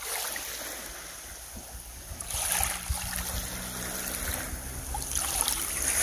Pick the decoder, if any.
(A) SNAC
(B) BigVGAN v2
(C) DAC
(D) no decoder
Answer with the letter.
B